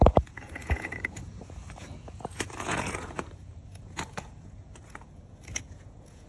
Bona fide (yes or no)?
no